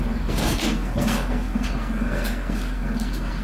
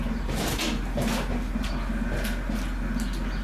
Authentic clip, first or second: second